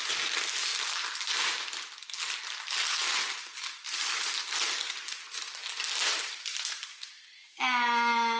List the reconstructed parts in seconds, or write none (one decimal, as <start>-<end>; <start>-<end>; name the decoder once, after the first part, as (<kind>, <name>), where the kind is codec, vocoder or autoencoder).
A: none